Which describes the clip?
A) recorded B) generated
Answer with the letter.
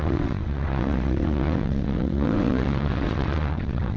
B